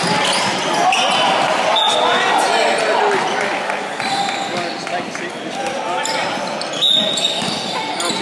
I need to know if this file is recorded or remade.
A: recorded